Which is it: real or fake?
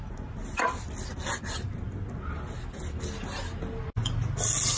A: real